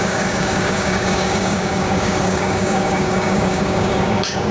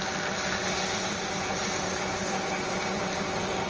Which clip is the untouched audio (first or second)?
second